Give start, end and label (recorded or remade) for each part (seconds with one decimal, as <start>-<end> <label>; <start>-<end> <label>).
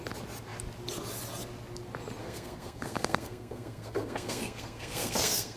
0.0-2.2 recorded; 2.2-5.6 remade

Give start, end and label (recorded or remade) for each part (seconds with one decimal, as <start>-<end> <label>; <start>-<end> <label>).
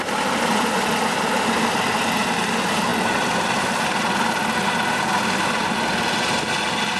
0.0-7.0 recorded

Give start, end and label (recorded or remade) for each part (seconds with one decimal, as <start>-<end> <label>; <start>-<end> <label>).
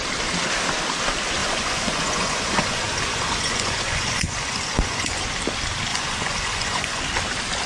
0.0-1.4 recorded; 1.4-5.2 remade; 5.2-5.9 recorded; 5.9-7.0 remade; 7.0-7.7 recorded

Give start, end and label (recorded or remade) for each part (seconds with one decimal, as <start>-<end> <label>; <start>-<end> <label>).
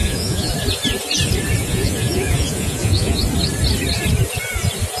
0.0-0.5 remade; 0.5-1.6 recorded; 1.6-3.2 remade; 3.2-5.0 recorded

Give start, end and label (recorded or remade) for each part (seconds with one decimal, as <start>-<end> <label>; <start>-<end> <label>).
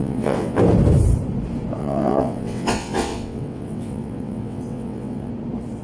0.0-0.6 remade; 0.6-1.8 recorded; 1.8-5.3 remade; 5.3-5.8 recorded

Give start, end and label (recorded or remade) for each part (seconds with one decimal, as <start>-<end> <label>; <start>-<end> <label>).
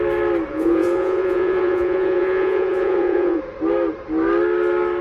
0.0-0.5 recorded; 0.5-3.4 remade; 3.4-5.0 recorded